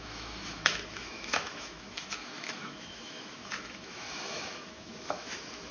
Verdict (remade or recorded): remade